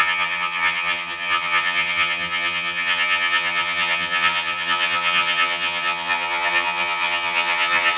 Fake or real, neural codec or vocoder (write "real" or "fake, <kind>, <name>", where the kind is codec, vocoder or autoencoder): fake, vocoder, HiFi-GAN